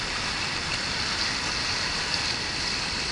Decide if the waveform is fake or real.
real